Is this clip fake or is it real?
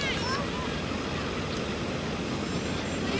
real